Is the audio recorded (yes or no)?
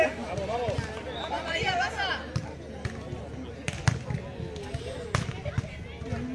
yes